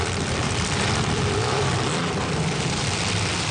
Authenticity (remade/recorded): remade